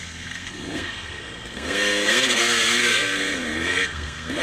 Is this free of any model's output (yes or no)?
no